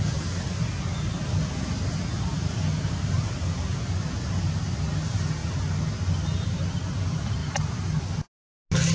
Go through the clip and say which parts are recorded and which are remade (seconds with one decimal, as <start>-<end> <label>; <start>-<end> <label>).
0.0-8.9 recorded